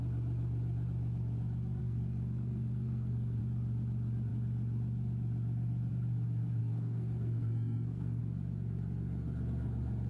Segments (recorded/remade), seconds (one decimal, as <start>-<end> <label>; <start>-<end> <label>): 0.0-1.8 recorded; 1.8-3.4 remade; 3.4-6.6 recorded; 6.6-8.2 remade; 8.2-10.1 recorded